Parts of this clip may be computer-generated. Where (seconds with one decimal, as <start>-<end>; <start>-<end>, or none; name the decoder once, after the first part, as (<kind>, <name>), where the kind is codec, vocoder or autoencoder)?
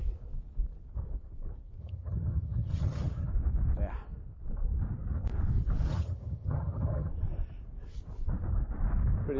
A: 1.8-3.3 (vocoder, HiFi-GAN); 5.9-7.1